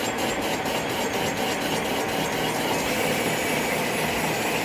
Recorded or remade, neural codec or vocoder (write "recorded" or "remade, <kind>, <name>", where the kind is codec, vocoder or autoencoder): recorded